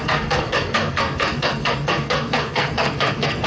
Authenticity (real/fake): fake